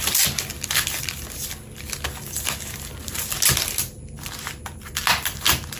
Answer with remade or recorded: recorded